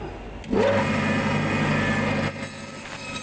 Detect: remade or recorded recorded